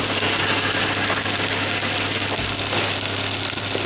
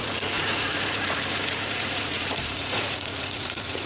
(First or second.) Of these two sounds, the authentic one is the first